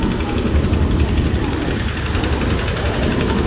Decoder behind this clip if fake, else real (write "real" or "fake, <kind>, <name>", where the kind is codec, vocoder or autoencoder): real